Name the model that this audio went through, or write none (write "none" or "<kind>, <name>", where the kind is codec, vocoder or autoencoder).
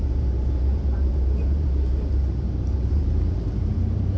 vocoder, BigVGAN v2